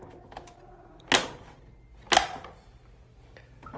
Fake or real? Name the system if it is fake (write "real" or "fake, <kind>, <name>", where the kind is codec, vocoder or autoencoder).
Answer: real